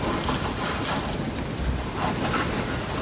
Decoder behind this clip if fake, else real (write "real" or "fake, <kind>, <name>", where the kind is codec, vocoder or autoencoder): real